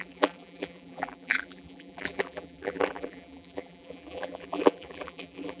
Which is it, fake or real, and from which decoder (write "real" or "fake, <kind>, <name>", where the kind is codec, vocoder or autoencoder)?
fake, vocoder, BigVGAN v2